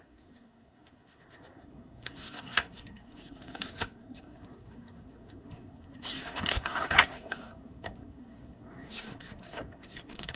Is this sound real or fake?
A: fake